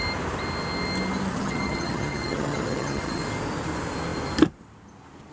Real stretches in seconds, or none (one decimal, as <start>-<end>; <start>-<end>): 0.0-1.3; 3.2-5.3